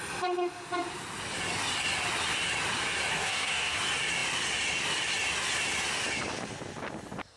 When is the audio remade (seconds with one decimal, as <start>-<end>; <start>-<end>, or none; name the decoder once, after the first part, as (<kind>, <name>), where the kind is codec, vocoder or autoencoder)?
3.1-3.8 (codec, SNAC)